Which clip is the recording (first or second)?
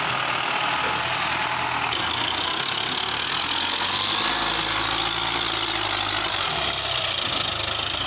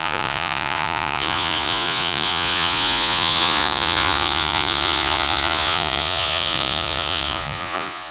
first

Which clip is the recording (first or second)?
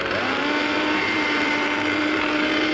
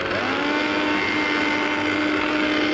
second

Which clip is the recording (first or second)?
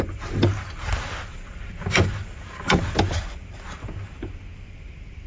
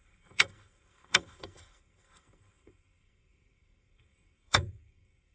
first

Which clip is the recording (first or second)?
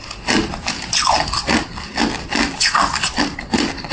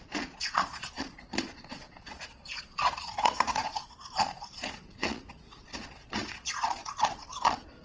first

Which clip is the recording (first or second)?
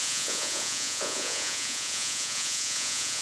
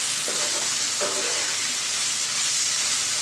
second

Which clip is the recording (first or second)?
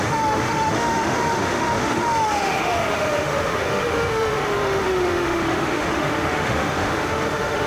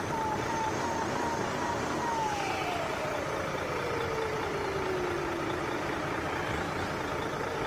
second